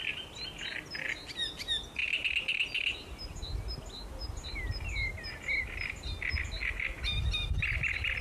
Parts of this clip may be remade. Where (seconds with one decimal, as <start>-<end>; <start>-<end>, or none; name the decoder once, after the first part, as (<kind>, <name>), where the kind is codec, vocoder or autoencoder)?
none